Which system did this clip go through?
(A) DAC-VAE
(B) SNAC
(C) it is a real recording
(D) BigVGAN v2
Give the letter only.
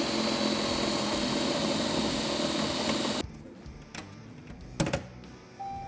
C